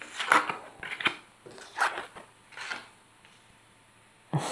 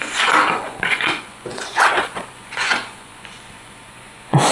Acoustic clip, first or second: first